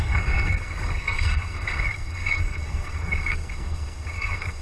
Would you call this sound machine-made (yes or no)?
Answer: yes